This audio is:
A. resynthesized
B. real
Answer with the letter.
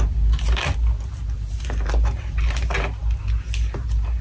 B